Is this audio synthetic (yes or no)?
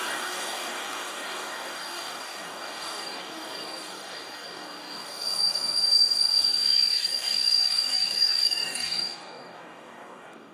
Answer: yes